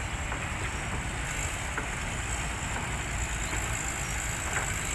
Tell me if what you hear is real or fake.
real